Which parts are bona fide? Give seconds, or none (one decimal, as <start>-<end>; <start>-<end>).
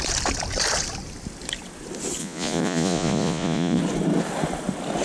0.0-2.2; 3.8-5.0